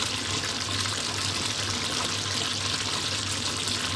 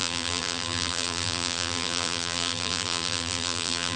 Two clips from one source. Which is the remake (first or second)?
second